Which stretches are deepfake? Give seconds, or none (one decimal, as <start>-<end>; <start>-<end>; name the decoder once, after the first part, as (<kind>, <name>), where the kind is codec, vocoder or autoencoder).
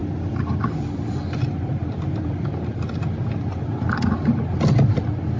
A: none